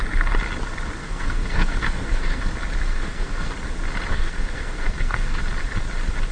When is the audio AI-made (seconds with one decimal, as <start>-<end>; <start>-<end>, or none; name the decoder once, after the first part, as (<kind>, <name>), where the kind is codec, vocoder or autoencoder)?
1.0-2.4 (codec, SNAC); 2.9-3.5; 4.1-5.4